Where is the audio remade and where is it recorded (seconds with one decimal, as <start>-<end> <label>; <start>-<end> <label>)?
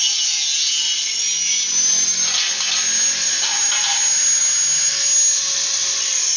0.0-6.4 recorded